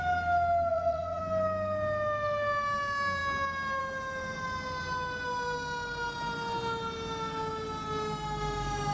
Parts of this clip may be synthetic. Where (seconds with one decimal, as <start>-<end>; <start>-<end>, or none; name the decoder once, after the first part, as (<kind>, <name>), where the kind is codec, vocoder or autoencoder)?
0.7-1.2 (vocoder, Vocos)